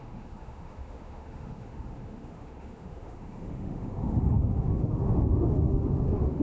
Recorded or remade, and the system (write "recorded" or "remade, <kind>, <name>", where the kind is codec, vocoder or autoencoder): remade, autoencoder, DAC-VAE